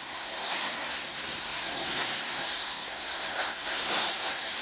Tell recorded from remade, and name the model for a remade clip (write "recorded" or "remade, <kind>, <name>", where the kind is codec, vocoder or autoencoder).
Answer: remade, codec, SNAC